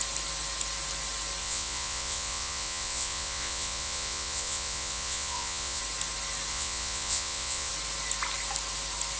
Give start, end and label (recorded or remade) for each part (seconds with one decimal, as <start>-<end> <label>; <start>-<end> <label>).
0.0-1.4 recorded; 1.4-5.8 remade; 5.8-6.5 recorded; 6.5-7.7 remade; 7.7-9.2 recorded